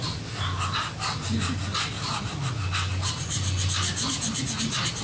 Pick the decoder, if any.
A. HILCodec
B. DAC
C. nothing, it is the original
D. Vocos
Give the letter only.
C